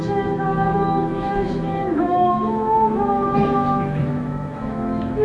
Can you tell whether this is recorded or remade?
remade